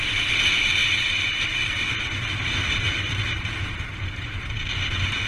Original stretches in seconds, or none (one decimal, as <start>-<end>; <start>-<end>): 0.0-0.8; 1.7-5.3